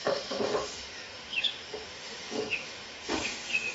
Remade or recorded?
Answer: remade